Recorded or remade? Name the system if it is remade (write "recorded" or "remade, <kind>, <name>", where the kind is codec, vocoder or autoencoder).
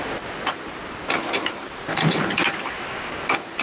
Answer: recorded